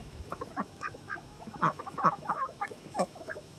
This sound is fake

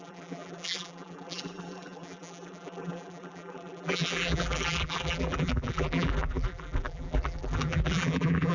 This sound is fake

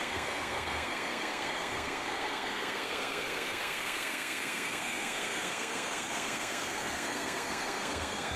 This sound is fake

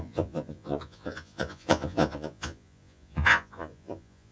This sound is fake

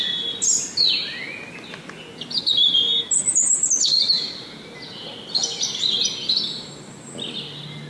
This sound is real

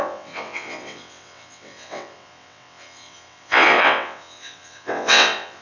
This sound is fake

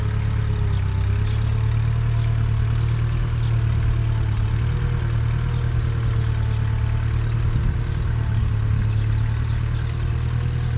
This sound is real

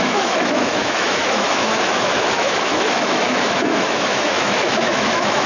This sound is fake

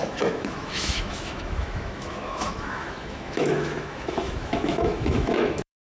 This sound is fake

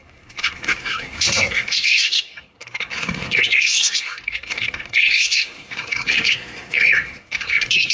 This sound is fake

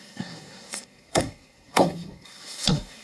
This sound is fake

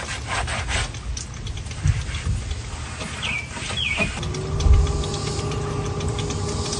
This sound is real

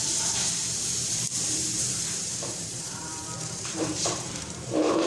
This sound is fake